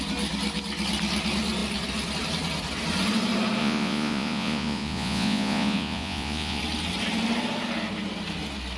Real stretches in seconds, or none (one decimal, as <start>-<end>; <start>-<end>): 0.0-3.6; 6.6-8.8